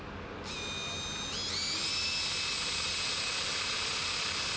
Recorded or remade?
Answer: recorded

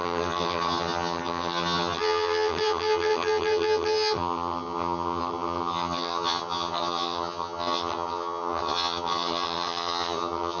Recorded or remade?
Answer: remade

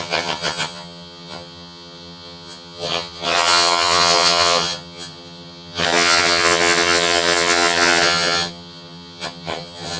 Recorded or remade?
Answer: remade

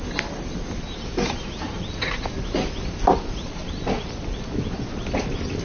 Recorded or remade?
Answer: recorded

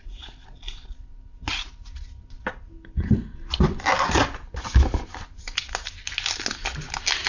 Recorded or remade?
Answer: recorded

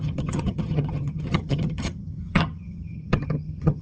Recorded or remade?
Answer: remade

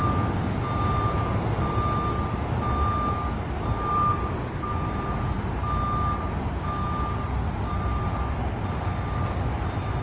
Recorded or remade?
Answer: recorded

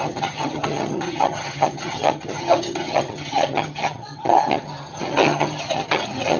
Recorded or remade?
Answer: remade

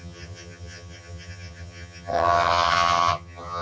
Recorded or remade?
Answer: remade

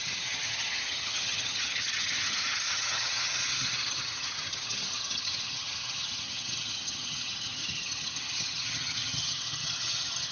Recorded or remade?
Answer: remade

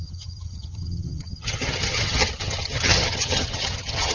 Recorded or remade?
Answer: remade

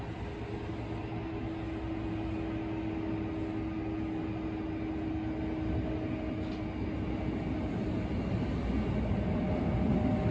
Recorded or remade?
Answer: recorded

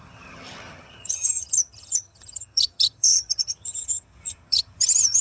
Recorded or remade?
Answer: remade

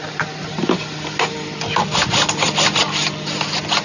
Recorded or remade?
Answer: recorded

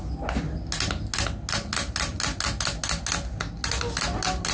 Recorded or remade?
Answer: recorded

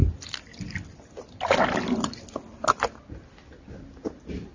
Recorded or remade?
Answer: recorded